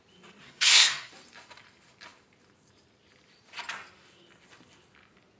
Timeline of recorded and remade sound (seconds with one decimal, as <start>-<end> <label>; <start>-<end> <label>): 0.0-0.4 recorded; 0.4-1.1 remade; 1.1-5.4 recorded